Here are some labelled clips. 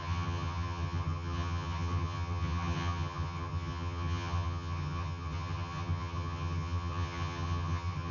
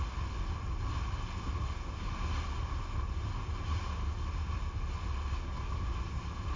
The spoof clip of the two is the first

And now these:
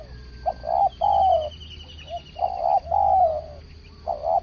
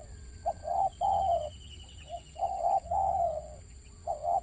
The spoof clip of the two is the second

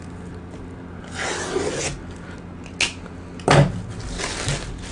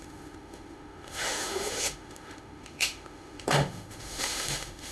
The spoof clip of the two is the second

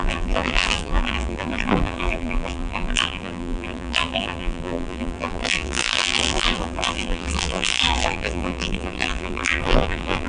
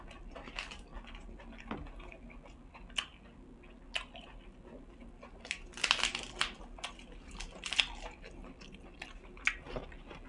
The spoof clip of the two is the first